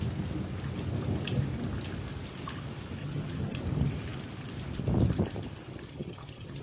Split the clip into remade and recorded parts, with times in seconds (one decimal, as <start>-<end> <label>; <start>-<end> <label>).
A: 0.0-3.0 recorded; 3.0-3.6 remade; 3.6-5.9 recorded; 5.9-6.6 remade

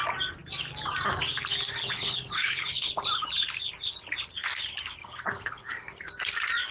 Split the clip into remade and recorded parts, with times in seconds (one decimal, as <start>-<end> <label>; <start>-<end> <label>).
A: 0.0-1.8 recorded; 1.8-2.9 remade; 2.9-5.0 recorded; 5.0-6.1 remade; 6.1-6.7 recorded

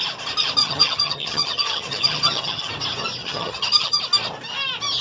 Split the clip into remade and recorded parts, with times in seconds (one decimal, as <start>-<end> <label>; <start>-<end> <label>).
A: 0.0-0.6 recorded; 0.6-2.7 remade; 2.7-3.2 recorded; 3.2-4.0 remade; 4.0-5.0 recorded

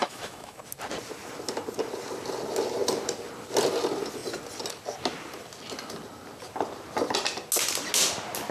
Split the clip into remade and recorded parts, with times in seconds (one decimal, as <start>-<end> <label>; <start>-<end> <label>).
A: 0.0-0.6 remade; 0.6-8.5 recorded

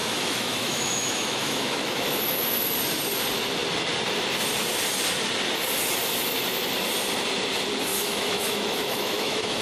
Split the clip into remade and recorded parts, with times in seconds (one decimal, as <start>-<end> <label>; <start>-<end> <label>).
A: 0.0-2.2 remade; 2.2-7.9 recorded; 7.9-9.6 remade